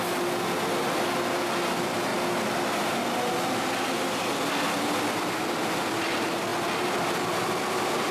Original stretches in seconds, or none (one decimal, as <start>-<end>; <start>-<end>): 0.0-8.1

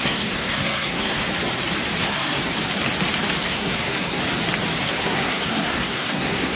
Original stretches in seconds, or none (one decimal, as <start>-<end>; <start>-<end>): 1.2-2.0; 2.4-3.4; 4.2-4.8

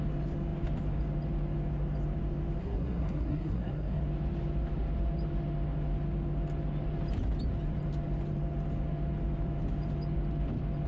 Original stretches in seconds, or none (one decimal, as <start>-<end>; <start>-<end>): 0.0-2.6; 4.0-10.9

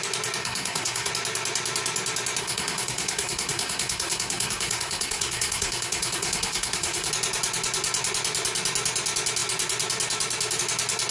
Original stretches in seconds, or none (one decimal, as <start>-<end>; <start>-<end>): 0.0-0.4; 1.1-2.4; 7.1-11.1

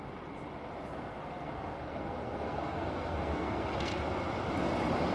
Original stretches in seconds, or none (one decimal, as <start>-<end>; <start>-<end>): 0.0-0.9; 4.0-5.1

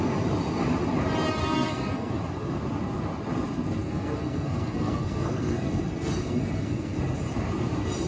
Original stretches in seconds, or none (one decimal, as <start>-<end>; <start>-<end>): 0.0-1.4; 2.1-3.8; 7.0-8.1

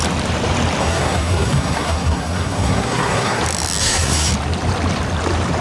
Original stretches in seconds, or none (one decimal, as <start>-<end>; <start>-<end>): 0.0-0.8; 3.4-3.8; 4.3-5.6

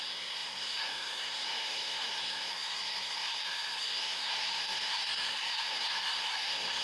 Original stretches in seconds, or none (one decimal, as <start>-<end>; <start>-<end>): none